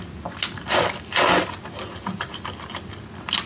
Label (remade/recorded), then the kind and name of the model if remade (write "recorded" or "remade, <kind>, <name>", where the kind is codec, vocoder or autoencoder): recorded